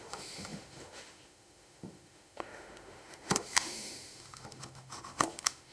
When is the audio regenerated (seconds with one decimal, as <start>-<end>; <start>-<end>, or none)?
0.0-5.7